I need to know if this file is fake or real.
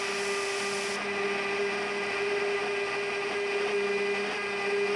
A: real